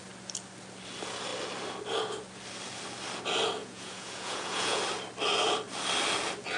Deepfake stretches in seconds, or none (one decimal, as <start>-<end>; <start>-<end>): 3.6-4.8